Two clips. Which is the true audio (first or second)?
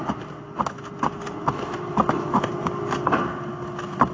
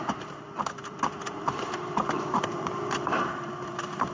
first